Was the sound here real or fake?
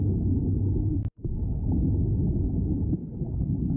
real